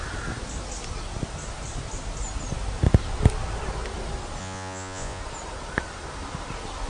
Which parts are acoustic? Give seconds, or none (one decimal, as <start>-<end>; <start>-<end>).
0.0-4.4; 5.2-6.9